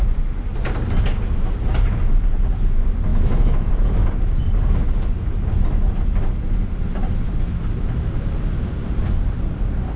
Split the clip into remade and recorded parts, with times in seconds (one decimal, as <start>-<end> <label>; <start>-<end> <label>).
0.0-3.1 recorded; 3.1-3.7 remade; 3.7-10.0 recorded